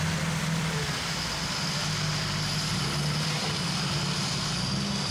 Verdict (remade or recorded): recorded